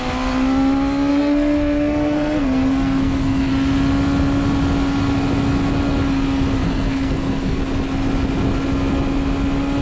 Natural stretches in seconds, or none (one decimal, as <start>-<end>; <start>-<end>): 0.0-1.1; 3.5-6.6; 7.6-9.8